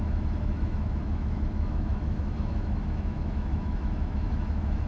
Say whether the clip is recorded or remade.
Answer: remade